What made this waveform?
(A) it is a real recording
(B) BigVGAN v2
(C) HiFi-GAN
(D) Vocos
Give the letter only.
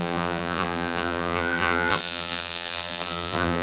B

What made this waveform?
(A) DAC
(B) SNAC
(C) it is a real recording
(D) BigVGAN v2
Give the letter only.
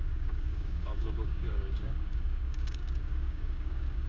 A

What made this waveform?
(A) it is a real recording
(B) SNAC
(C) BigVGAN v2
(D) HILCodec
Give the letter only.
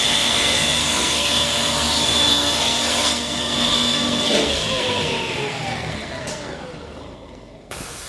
B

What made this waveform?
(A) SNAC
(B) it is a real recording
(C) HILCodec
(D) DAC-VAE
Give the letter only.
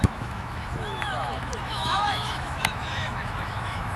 D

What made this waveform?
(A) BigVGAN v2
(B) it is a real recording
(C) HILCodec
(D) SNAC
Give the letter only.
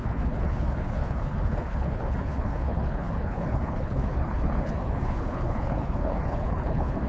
C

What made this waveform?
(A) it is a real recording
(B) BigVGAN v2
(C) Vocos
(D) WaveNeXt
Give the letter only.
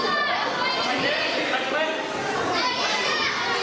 A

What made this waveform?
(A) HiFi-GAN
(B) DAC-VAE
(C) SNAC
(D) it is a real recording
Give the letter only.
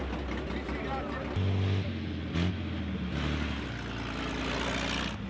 D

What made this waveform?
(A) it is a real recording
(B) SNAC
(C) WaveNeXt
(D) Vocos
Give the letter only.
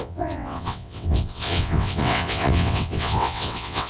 C